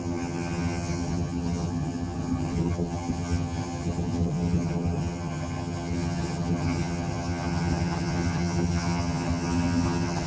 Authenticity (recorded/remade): remade